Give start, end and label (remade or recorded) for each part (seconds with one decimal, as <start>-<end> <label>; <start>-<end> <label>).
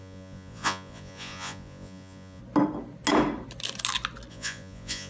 0.0-2.4 remade; 2.4-4.3 recorded; 4.3-5.1 remade